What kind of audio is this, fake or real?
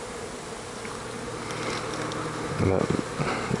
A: real